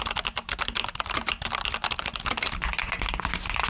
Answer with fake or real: real